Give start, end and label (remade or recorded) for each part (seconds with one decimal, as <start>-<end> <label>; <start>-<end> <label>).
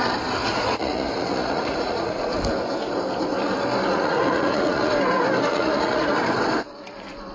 0.0-0.4 recorded; 0.4-2.4 remade; 2.4-3.9 recorded; 3.9-4.9 remade; 4.9-5.5 recorded; 5.5-6.1 remade; 6.1-7.3 recorded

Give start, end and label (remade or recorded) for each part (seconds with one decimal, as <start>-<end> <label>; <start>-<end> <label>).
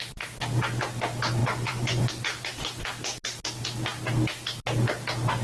0.0-1.4 recorded; 1.4-2.1 remade; 2.1-5.4 recorded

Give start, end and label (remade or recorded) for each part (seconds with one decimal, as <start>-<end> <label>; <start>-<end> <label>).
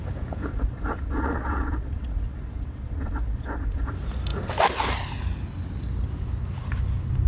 0.0-0.5 recorded; 0.5-3.9 remade; 3.9-7.3 recorded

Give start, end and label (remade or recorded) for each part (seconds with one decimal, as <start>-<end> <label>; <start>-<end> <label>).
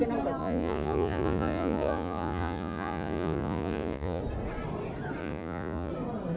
0.0-0.4 recorded; 0.4-4.2 remade; 4.2-5.2 recorded; 5.2-5.9 remade; 5.9-6.4 recorded